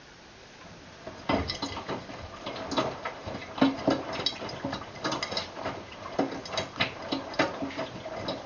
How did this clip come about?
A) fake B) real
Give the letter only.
B